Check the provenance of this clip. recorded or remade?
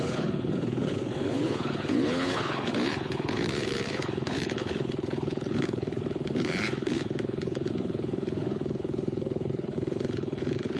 remade